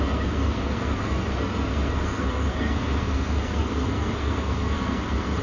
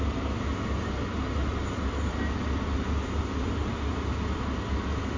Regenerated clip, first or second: first